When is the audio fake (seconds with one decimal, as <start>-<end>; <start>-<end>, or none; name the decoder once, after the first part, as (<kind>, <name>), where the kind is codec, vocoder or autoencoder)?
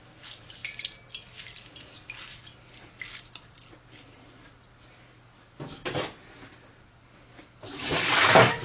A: none